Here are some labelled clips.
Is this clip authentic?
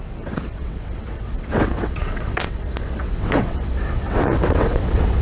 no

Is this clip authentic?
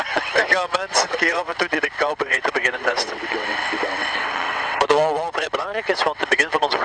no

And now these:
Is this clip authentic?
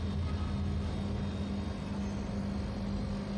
yes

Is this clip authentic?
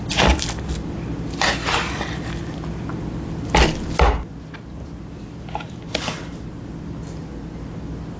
yes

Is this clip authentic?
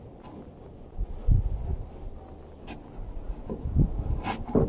yes